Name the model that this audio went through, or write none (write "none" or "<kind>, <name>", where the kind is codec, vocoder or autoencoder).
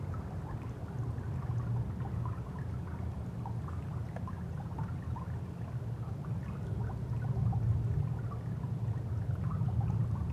none